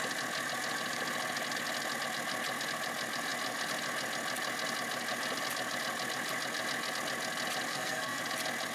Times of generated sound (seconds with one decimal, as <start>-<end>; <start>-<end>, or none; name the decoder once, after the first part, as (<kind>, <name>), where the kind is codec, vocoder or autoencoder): 7.7-8.2 (codec, SNAC)